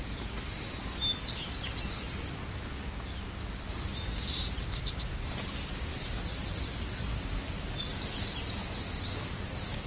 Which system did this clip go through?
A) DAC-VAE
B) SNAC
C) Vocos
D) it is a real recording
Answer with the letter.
D